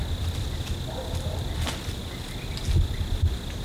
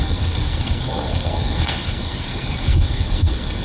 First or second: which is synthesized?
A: second